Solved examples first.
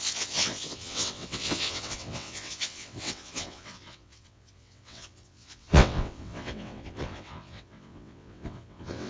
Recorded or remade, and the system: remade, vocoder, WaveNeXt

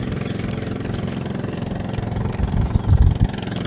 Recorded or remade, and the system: recorded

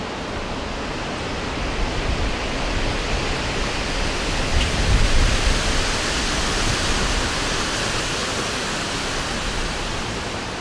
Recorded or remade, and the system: recorded